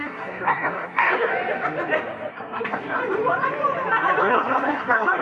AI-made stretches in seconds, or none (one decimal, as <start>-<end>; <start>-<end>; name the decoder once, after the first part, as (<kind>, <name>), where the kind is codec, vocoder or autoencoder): 0.0-1.3 (codec, SNAC); 2.3-3.0; 4.2-5.2